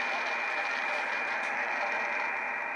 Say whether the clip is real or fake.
fake